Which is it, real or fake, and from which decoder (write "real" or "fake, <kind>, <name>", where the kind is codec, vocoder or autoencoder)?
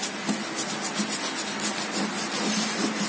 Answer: real